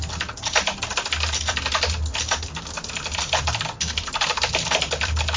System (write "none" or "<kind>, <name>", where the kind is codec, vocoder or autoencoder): none